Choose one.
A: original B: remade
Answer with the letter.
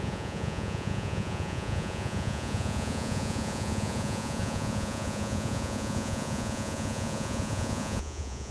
B